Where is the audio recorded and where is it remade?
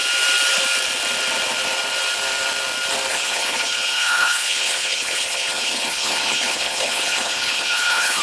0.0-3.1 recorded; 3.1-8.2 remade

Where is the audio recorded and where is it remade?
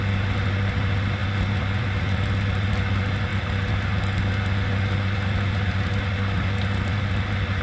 0.0-7.6 recorded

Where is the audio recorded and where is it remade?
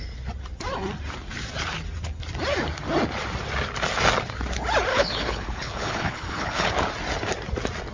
0.0-4.9 recorded; 4.9-6.7 remade; 6.7-7.9 recorded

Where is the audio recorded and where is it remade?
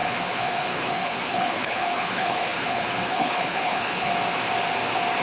0.0-4.1 remade; 4.1-5.2 recorded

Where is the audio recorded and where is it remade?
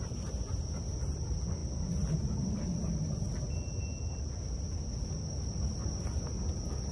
0.0-6.9 recorded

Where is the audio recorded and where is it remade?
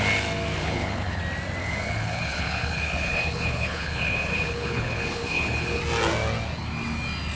0.0-0.6 recorded; 0.6-1.2 remade; 1.2-1.6 recorded; 1.6-5.8 remade; 5.8-7.4 recorded